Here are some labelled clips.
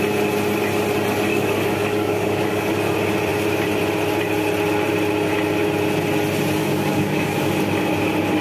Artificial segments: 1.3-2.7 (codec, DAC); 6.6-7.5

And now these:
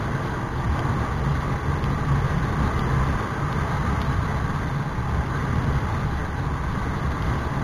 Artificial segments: none

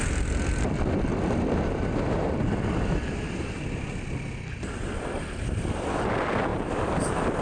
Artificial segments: 1.1-2.9 (vocoder, BigVGAN v2); 6.5-7.4

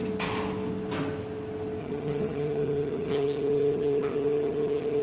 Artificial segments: 1.8-5.0 (vocoder, HiFi-GAN)

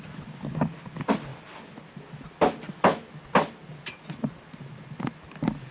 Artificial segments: none

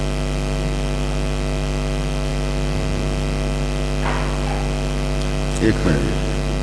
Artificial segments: none

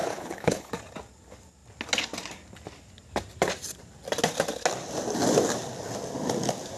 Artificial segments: 0.0-0.7 (codec, HILCodec)